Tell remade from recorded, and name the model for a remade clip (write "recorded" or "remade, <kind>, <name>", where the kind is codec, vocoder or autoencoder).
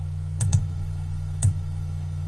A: remade, autoencoder, DAC-VAE